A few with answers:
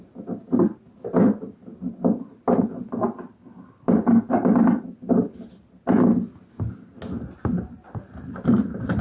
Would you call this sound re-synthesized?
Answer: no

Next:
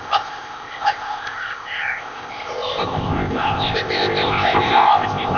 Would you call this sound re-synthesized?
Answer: yes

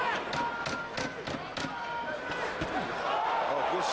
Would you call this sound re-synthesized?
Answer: no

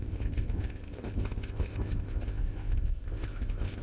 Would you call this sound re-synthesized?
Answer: yes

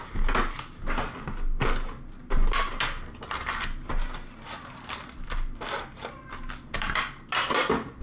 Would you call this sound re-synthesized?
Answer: no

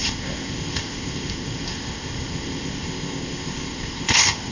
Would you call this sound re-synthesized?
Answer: yes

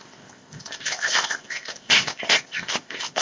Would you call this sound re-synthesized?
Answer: yes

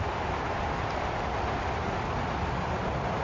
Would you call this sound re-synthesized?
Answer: no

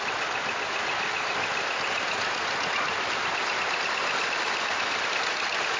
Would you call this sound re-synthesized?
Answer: no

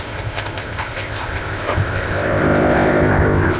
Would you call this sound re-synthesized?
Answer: yes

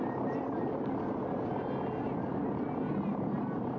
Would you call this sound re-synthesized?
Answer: no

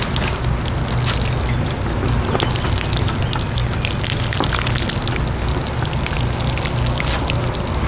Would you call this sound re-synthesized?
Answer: no